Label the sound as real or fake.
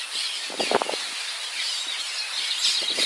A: real